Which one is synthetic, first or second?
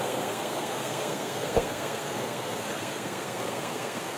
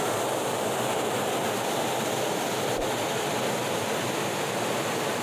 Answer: first